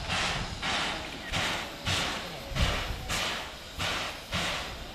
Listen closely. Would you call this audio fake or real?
real